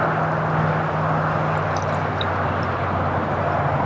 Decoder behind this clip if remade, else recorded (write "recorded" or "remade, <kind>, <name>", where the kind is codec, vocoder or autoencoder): recorded